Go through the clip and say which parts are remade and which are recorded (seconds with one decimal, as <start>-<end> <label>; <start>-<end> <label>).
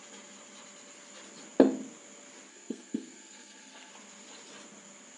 0.0-2.5 recorded; 2.5-3.9 remade; 3.9-5.2 recorded